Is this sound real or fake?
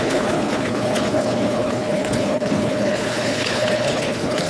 fake